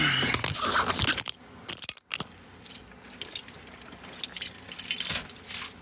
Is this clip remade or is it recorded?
recorded